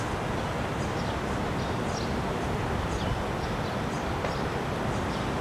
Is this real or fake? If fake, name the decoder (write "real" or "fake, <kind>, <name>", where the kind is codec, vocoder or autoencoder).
real